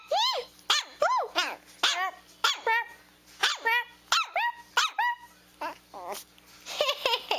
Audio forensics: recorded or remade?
recorded